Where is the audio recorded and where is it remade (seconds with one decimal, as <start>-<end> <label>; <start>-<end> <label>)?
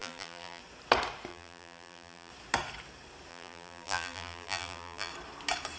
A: 0.0-0.6 remade; 0.6-1.3 recorded; 1.3-2.3 remade; 2.3-3.3 recorded; 3.3-5.1 remade; 5.1-5.8 recorded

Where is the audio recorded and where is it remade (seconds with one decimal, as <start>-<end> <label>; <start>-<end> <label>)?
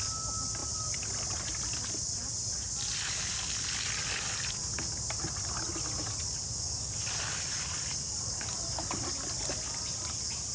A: 0.0-10.5 recorded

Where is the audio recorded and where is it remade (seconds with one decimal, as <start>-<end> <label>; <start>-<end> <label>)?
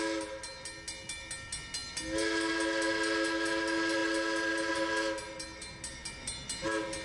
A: 0.0-7.0 recorded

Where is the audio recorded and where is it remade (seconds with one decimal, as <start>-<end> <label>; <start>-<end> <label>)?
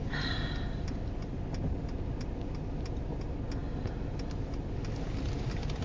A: 0.0-5.8 recorded